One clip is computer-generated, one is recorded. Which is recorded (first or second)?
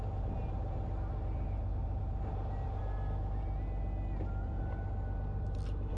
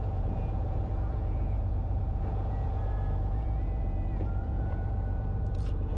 first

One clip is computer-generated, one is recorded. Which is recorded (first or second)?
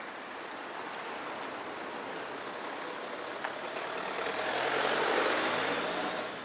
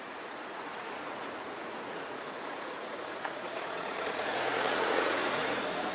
first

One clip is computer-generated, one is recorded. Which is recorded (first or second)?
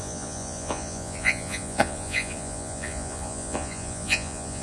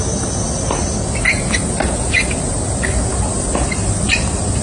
second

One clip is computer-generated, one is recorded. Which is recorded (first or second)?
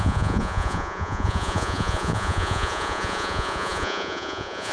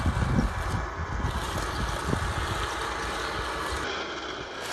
second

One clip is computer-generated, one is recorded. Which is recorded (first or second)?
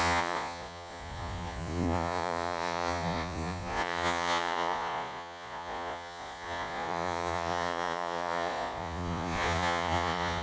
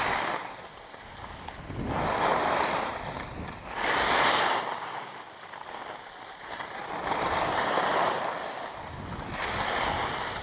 second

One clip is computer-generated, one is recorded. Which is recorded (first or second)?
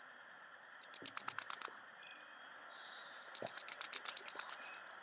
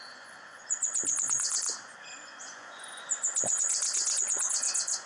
first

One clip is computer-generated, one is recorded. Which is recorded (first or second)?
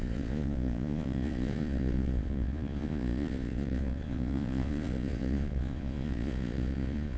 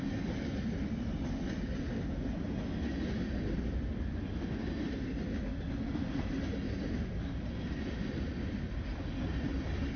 second